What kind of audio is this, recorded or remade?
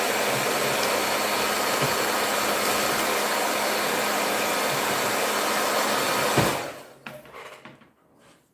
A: recorded